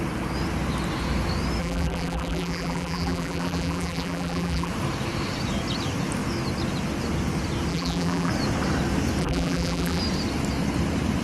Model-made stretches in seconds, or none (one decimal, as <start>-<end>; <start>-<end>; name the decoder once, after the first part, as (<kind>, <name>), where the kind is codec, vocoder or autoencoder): 1.6-4.7 (vocoder, BigVGAN v2); 7.7-8.3; 9.2-10.0